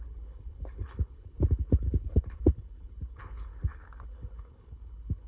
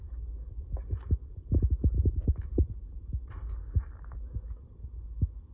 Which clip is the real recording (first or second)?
second